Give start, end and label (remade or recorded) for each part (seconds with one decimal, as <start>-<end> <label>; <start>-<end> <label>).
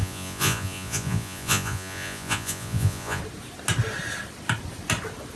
0.0-3.2 remade; 3.2-5.4 recorded